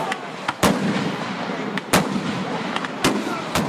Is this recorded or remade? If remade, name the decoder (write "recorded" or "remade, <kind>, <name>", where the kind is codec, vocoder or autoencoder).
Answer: recorded